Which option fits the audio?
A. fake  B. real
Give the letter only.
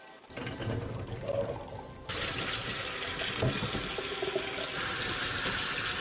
B